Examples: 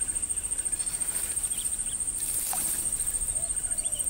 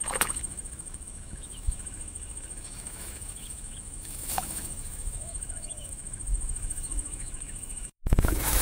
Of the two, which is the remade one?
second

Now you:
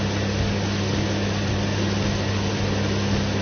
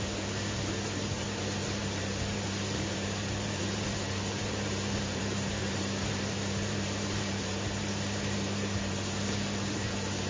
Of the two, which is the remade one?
second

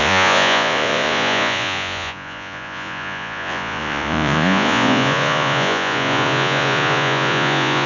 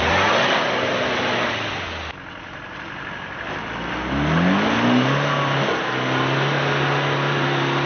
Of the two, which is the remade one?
first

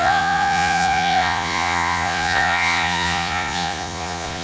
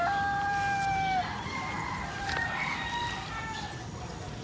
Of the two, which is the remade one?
first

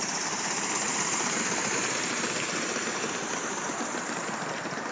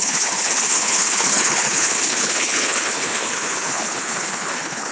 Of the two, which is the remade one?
second